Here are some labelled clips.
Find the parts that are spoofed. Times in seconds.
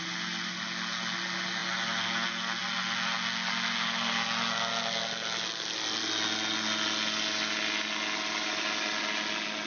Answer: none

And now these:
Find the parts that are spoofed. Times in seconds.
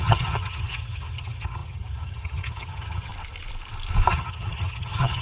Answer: 0.0-3.1; 4.1-5.2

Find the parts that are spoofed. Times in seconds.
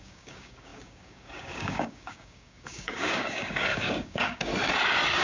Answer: 0.0-4.5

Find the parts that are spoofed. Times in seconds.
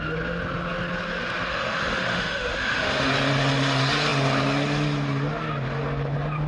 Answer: 1.5-3.1